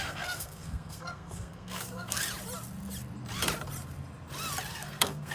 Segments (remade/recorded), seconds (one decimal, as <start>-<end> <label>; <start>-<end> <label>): 0.0-2.2 remade; 2.2-4.7 recorded; 4.7-5.3 remade